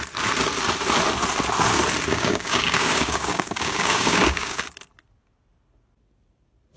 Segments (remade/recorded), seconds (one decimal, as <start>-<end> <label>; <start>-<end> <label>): 0.0-2.1 recorded; 2.1-4.6 remade; 4.6-6.8 recorded